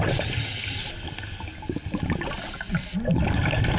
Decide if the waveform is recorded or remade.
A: recorded